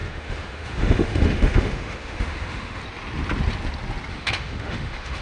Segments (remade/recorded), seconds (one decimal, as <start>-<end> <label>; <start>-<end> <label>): 0.0-2.8 remade; 2.8-4.1 recorded; 4.1-5.2 remade